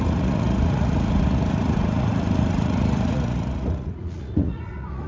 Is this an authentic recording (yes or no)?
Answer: no